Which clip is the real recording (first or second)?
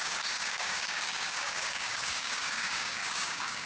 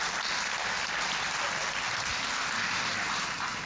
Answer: second